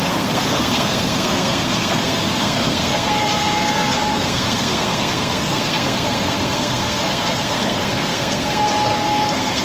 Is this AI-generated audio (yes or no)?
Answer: yes